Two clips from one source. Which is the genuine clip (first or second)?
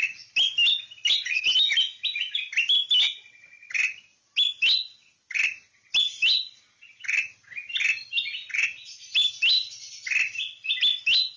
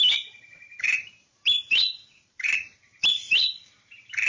first